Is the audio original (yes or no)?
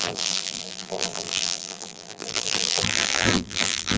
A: no